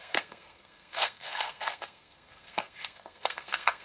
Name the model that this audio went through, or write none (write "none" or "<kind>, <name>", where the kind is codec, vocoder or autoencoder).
codec, SNAC